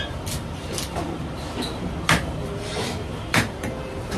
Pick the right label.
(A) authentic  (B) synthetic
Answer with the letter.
A